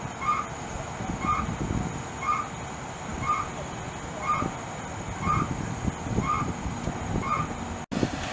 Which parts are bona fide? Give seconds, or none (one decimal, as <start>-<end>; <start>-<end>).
0.0-8.3

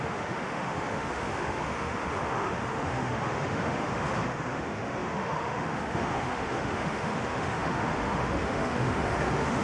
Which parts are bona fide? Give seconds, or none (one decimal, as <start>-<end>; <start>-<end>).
none

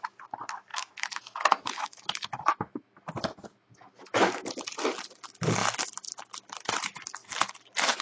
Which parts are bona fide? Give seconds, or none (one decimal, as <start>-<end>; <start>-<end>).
0.0-0.7; 2.9-3.5; 4.3-8.0

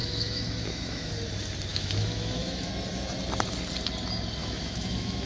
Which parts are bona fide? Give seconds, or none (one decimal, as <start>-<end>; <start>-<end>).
1.1-1.7; 2.7-4.4

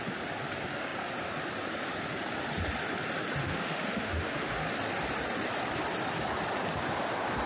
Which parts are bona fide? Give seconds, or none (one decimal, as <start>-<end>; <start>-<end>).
0.0-3.4; 4.5-7.5

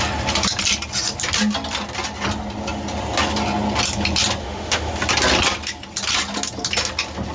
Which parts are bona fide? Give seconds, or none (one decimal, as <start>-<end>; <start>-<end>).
0.0-4.4; 4.9-7.3